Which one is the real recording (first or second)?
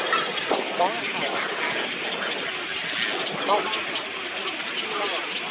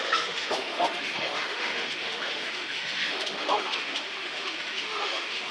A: first